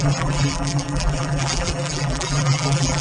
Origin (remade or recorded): remade